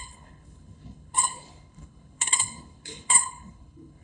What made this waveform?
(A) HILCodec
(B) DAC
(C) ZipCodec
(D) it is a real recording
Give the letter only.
A